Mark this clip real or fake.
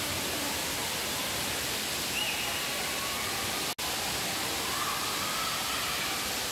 real